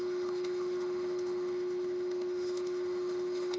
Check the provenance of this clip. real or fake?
fake